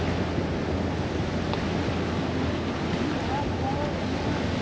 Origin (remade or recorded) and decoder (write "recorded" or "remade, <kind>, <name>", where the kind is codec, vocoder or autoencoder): recorded